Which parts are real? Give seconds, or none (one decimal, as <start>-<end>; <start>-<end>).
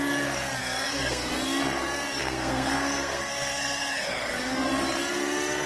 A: 0.0-0.6; 1.3-2.2; 4.5-5.7